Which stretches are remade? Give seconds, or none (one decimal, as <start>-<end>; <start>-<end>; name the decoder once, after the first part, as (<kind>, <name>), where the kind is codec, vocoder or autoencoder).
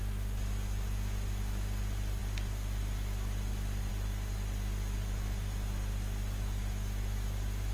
none